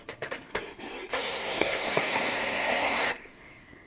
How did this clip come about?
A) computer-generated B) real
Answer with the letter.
A